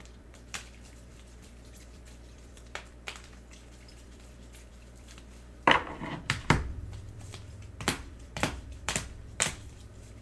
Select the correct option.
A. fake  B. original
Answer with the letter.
A